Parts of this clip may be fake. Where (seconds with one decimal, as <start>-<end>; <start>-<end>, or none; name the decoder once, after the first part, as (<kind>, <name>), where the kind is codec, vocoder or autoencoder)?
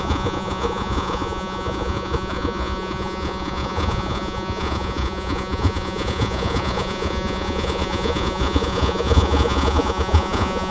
0.0-10.7 (vocoder, Vocos)